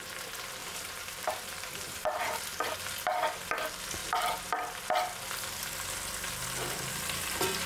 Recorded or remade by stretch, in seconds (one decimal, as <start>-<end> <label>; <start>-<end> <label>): 0.0-0.6 recorded; 0.6-2.4 remade; 2.4-7.7 recorded